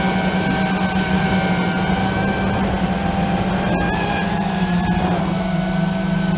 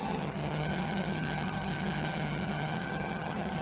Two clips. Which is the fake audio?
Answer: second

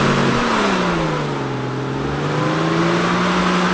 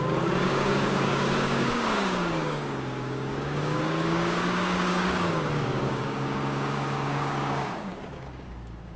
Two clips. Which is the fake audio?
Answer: second